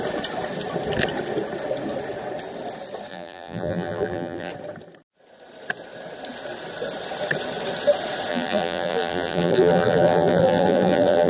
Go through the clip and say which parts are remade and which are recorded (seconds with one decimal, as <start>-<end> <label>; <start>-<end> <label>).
0.0-3.1 recorded; 3.1-4.5 remade; 4.5-8.3 recorded; 8.3-11.3 remade